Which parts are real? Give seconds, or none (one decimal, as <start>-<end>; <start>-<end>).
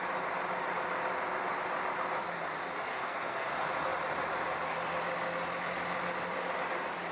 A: 0.0-2.9; 3.5-7.1